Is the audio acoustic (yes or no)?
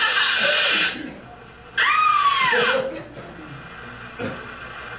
yes